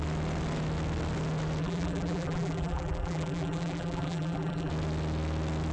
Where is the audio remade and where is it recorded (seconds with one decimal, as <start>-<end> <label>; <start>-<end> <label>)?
0.0-1.6 recorded; 1.6-4.7 remade; 4.7-5.7 recorded